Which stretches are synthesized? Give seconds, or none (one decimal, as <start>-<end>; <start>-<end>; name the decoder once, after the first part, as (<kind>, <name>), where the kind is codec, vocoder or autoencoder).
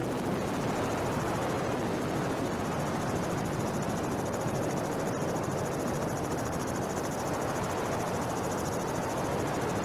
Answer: none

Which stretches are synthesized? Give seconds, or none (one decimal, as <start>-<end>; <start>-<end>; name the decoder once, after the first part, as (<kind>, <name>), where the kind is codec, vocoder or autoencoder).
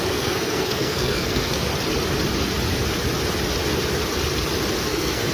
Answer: 0.0-1.7 (codec, SNAC); 4.8-5.3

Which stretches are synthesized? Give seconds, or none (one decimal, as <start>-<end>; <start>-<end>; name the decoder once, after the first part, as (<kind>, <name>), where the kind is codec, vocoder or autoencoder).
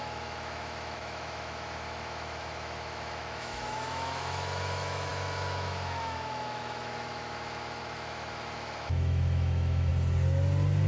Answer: 0.0-9.9 (autoencoder, DAC-VAE)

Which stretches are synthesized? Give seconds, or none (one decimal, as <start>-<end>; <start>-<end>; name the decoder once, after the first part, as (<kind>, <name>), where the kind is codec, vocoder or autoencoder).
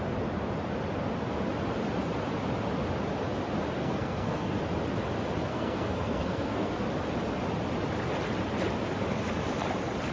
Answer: 3.8-4.6 (codec, SNAC); 5.5-6.7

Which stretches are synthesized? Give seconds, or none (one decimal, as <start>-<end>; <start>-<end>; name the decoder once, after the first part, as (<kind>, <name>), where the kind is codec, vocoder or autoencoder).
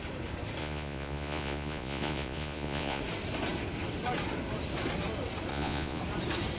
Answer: 0.6-3.0 (vocoder, Vocos); 5.5-6.0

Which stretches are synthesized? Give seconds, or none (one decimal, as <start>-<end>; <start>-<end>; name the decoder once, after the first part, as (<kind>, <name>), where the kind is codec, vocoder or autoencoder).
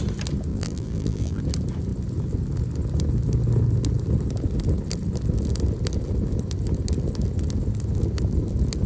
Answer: 0.5-1.4 (vocoder, BigVGAN v2)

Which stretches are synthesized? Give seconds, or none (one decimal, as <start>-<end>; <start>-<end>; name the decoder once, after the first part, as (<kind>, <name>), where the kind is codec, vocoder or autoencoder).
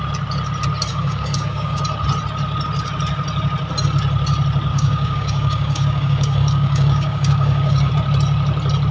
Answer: 0.9-1.8 (codec, DAC); 4.7-7.9